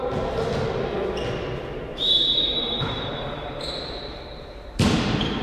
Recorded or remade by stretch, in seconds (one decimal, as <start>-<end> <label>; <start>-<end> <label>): 0.0-1.9 recorded; 1.9-5.4 remade